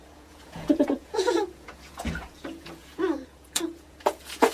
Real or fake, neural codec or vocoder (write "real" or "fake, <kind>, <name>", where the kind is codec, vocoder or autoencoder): fake, vocoder, Vocos